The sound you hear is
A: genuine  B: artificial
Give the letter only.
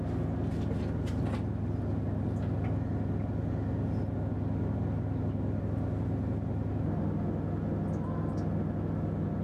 A